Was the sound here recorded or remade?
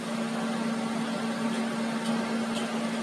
recorded